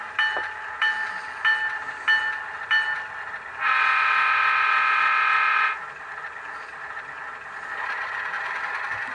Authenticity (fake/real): real